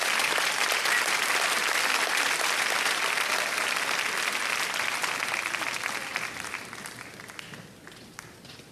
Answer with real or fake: real